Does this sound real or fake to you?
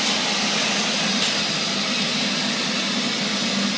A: real